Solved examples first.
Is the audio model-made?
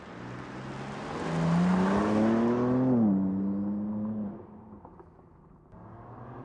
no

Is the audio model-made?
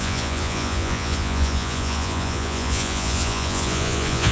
yes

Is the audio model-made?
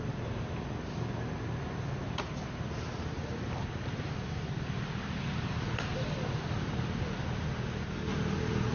no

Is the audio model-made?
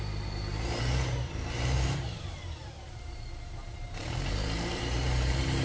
yes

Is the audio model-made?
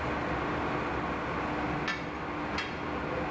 no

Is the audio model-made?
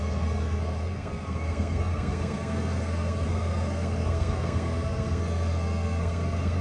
yes